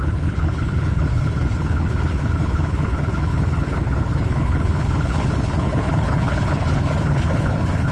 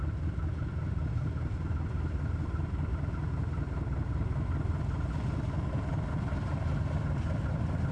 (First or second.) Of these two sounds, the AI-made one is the first